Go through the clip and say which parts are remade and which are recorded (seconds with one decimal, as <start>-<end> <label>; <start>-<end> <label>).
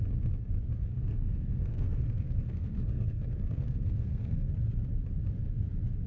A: 0.0-0.8 recorded; 0.8-4.5 remade; 4.5-6.1 recorded